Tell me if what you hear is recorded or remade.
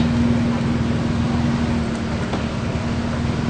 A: recorded